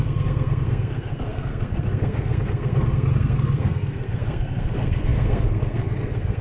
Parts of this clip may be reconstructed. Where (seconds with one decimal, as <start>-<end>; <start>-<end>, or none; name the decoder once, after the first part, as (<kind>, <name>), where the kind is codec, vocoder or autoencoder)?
0.0-6.4 (codec, SNAC)